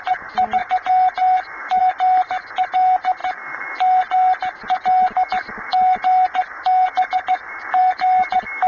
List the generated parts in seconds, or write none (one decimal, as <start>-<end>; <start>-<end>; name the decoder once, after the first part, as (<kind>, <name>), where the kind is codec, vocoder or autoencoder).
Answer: none